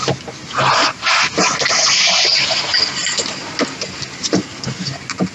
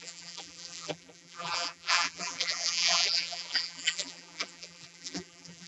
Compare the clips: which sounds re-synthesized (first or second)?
second